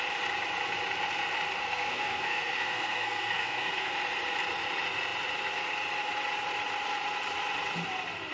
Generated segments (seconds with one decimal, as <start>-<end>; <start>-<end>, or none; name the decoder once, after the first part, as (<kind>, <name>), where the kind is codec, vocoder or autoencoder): 1.6-3.9 (codec, SNAC)